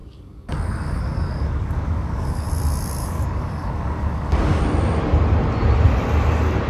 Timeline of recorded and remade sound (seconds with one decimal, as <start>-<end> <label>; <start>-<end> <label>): 0.0-2.5 remade; 2.5-3.0 recorded; 3.0-4.6 remade; 4.6-6.7 recorded